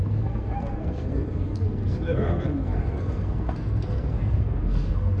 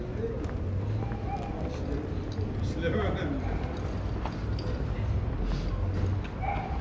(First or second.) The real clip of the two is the second